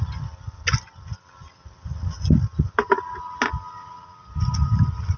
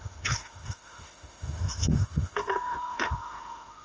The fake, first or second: second